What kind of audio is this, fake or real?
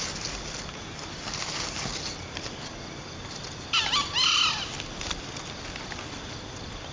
real